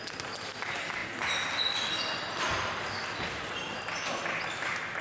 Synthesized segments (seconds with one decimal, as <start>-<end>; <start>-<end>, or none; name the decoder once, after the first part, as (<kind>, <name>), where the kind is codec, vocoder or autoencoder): none